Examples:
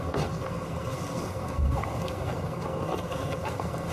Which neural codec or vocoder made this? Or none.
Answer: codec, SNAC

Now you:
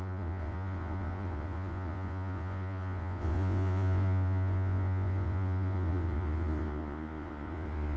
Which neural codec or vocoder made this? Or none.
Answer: vocoder, Vocos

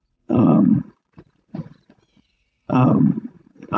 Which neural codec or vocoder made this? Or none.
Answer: vocoder, Vocos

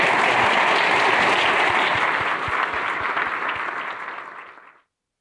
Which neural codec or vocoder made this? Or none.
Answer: none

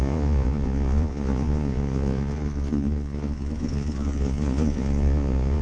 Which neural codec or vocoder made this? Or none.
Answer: vocoder, Vocos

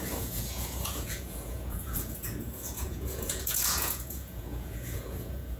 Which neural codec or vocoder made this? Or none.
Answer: vocoder, Vocos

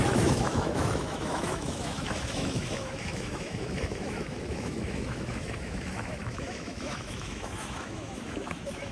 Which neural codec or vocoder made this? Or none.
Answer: autoencoder, DAC-VAE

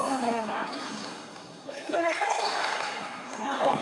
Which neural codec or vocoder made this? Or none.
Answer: codec, SNAC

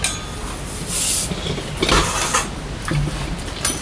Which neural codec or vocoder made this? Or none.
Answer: none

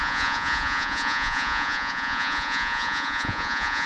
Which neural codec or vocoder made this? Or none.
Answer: vocoder, Vocos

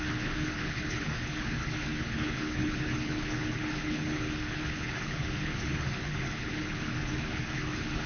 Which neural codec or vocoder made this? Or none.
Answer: codec, HILCodec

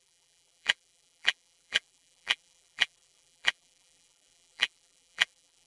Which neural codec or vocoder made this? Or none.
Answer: vocoder, BigVGAN v2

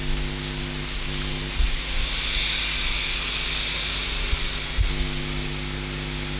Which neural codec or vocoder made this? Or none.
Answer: none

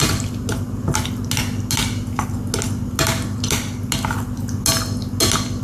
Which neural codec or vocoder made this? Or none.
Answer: none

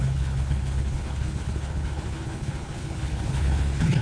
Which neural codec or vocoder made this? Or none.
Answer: codec, HILCodec